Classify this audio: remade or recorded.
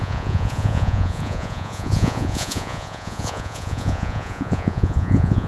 remade